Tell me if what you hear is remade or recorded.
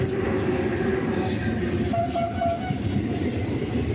recorded